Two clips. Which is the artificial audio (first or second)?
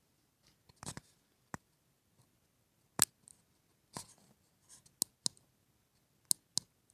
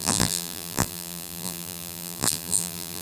second